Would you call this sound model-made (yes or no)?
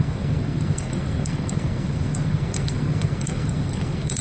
yes